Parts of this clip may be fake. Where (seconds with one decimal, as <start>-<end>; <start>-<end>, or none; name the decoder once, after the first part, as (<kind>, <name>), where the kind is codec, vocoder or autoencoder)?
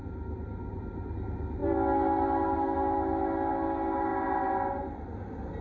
none